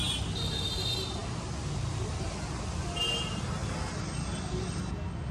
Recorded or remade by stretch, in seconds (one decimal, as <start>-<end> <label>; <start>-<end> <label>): 0.0-5.3 recorded